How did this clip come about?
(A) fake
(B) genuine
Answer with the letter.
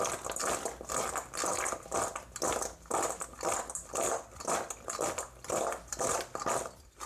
B